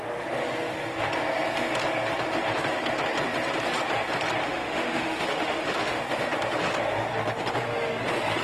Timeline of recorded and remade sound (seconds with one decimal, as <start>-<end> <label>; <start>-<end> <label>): 0.0-4.4 recorded; 4.4-6.0 remade; 6.0-8.4 recorded